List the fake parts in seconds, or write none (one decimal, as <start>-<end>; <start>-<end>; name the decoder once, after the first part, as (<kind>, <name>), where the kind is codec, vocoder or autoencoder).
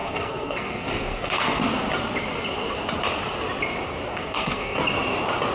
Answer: 0.0-1.6 (codec, SNAC); 4.1-4.8